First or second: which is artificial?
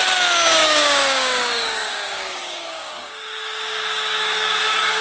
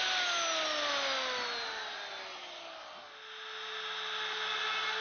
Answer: first